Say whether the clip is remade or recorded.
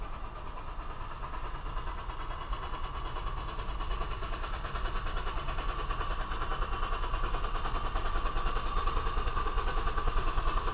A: recorded